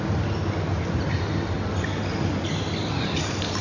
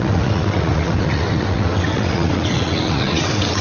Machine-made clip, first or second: second